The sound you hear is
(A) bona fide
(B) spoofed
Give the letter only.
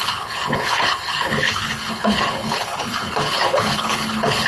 B